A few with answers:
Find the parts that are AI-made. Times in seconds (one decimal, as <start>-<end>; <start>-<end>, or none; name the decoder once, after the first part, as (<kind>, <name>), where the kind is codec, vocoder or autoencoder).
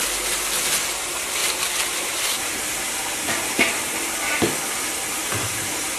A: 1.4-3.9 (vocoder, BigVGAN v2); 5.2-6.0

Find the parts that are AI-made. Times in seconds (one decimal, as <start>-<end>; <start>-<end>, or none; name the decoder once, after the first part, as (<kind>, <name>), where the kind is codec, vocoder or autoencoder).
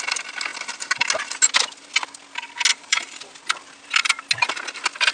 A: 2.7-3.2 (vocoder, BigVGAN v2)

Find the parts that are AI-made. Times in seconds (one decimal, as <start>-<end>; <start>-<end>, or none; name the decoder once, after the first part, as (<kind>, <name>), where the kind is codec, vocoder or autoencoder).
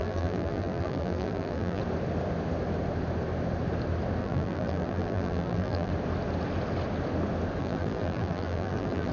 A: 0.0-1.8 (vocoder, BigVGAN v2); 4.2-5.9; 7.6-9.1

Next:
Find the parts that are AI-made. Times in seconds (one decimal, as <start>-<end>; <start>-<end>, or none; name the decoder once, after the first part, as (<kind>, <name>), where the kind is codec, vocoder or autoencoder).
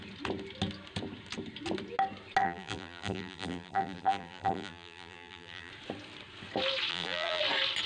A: 2.4-5.7 (vocoder, BigVGAN v2); 6.9-7.4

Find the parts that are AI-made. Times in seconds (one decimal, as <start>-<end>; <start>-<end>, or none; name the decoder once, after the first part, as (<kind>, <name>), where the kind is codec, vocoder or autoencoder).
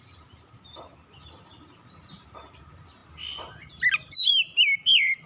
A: none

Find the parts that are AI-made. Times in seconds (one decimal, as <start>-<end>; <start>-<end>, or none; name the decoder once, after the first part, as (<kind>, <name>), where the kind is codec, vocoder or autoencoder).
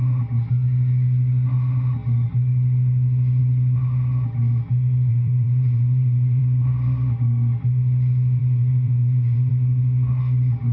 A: 5.1-6.4 (vocoder, BigVGAN v2); 8.4-9.5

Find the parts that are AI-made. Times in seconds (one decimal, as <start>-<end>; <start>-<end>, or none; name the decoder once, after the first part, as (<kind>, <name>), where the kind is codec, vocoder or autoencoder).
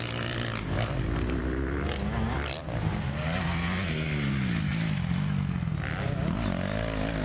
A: none